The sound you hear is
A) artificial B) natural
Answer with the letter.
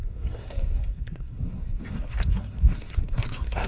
A